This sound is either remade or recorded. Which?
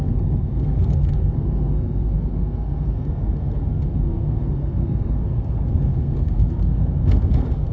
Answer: remade